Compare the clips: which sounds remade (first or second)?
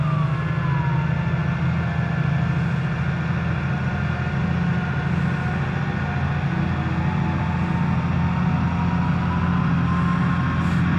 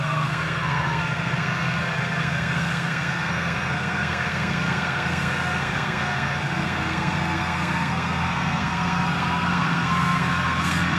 second